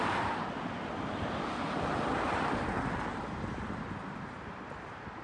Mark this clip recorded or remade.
recorded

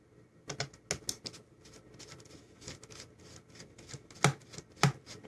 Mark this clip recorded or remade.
recorded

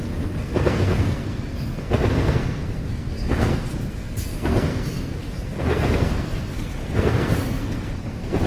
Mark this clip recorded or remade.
remade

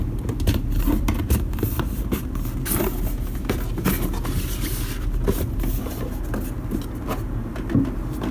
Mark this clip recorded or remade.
recorded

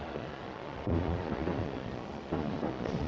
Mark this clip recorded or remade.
remade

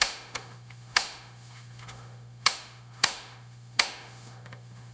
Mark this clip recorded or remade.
remade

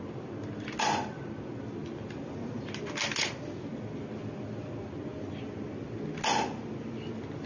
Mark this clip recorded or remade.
recorded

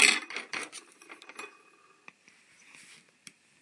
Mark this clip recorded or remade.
recorded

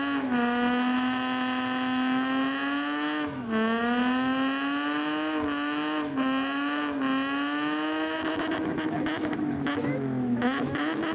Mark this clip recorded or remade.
remade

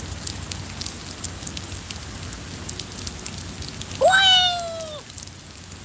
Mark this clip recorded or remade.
recorded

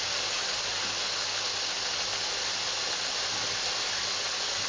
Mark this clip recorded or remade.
recorded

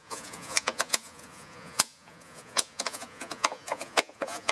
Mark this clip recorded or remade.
remade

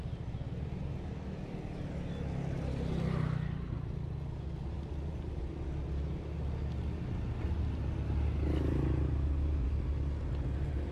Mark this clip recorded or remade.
recorded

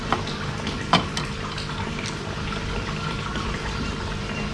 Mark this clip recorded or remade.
recorded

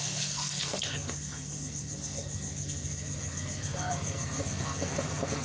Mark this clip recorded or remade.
remade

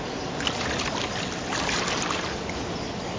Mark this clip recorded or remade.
recorded